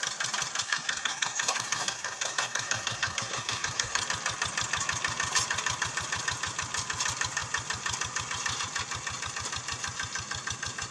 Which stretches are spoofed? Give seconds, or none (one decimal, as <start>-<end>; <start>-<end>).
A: 0.6-4.0